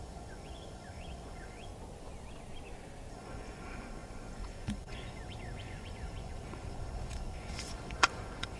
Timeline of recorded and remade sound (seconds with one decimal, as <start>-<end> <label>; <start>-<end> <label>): 0.0-1.7 remade; 1.7-3.1 recorded; 3.1-8.6 remade